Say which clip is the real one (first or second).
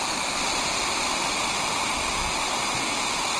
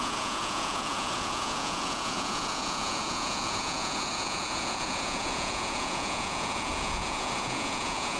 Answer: first